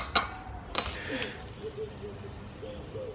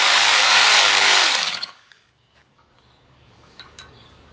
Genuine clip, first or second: first